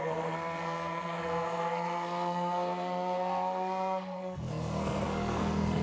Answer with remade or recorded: remade